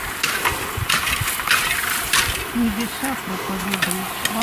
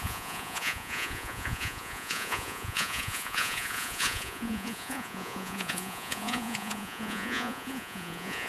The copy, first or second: second